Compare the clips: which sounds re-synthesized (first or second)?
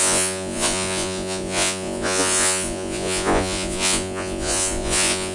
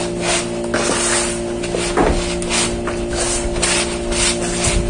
first